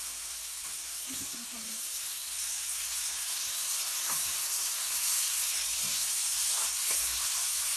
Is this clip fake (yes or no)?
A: yes